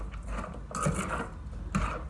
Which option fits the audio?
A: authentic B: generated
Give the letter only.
A